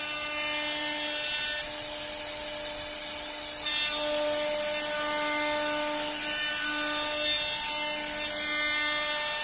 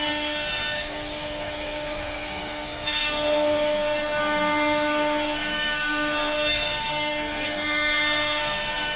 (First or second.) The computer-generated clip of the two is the second